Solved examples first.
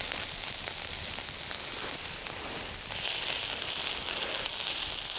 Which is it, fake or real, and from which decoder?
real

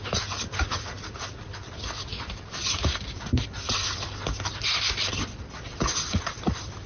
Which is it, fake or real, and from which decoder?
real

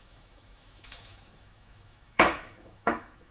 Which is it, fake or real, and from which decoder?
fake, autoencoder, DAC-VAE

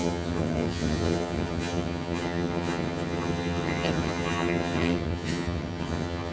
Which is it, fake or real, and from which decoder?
fake, vocoder, HiFi-GAN